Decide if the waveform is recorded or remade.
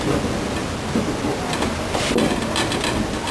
recorded